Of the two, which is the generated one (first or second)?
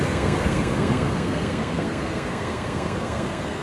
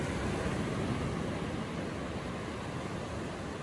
first